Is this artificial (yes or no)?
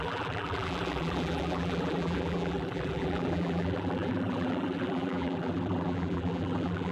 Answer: yes